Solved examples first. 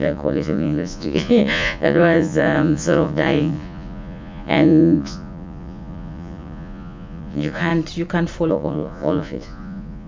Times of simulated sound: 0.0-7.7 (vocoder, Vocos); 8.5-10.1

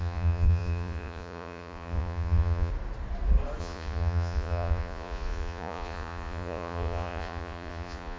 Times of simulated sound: 0.0-2.7 (vocoder, Vocos); 3.6-8.2

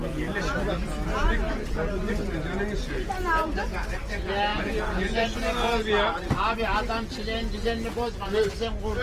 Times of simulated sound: 4.5-5.9 (vocoder, Vocos)

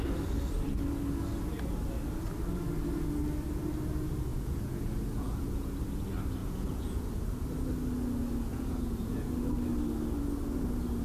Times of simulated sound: 4.3-5.7 (vocoder, Vocos); 6.4-7.0; 8.5-9.3